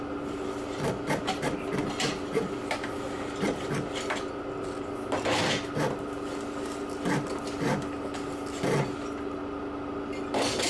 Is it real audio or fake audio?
real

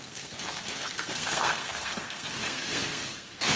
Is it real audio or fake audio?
fake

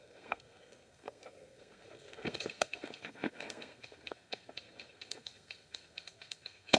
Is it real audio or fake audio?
fake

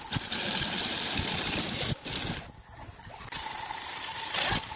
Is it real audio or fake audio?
real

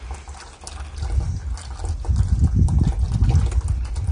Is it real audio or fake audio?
real